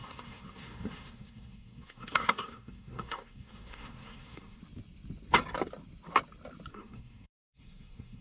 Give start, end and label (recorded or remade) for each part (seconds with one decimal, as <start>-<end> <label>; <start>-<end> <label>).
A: 0.0-4.6 remade; 4.6-6.7 recorded; 6.7-8.2 remade